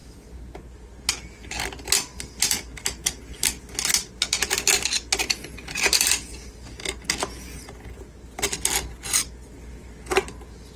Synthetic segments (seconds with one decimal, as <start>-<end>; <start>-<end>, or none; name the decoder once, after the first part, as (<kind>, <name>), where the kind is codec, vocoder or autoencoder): none